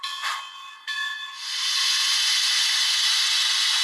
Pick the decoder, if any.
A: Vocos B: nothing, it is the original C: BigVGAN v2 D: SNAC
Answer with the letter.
A